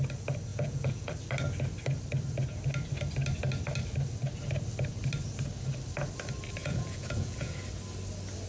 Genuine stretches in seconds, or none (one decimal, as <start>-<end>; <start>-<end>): 0.0-0.5; 1.1-6.6; 7.5-8.5